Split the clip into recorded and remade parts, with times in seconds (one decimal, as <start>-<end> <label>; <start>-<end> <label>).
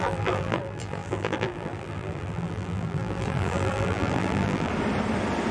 0.0-4.7 remade; 4.7-5.5 recorded